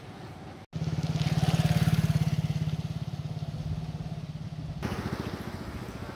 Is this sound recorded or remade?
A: recorded